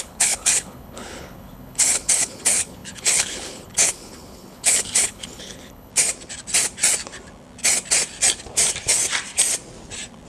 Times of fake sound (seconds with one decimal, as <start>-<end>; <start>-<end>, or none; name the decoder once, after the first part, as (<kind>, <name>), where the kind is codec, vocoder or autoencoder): 0.0-5.9 (codec, HILCodec)